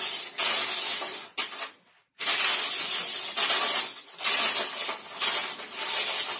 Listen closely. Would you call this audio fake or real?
real